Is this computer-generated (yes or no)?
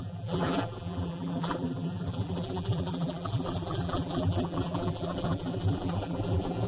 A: yes